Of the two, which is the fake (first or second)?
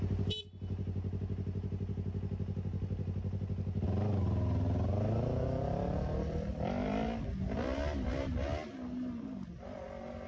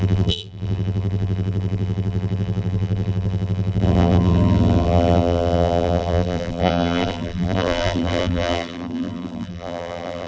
second